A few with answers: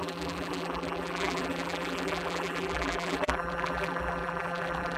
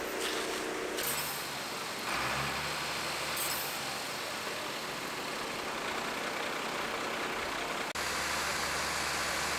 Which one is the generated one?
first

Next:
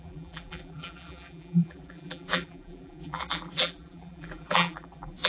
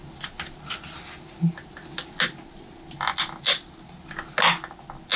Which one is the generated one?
first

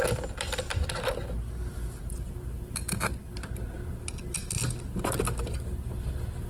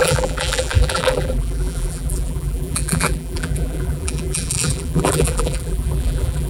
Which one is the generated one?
second